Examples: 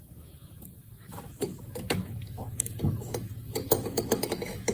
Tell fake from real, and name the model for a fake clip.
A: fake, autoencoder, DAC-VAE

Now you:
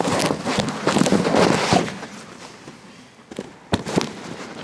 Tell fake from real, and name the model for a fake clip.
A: real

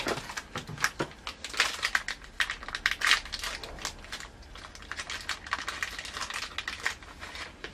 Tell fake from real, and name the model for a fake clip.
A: real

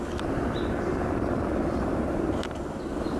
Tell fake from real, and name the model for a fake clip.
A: real